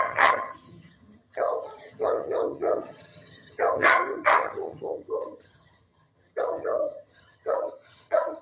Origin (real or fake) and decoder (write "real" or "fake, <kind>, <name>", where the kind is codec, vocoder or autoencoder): fake, vocoder, HiFi-GAN